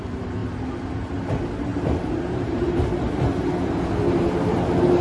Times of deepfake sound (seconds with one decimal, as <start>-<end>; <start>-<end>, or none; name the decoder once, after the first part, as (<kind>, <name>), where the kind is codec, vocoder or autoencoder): 0.4-1.2 (vocoder, BigVGAN v2); 1.7-2.9